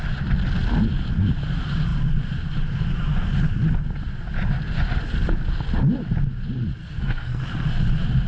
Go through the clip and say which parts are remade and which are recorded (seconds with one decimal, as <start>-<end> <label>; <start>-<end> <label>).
0.0-6.8 recorded; 6.8-7.4 remade; 7.4-8.3 recorded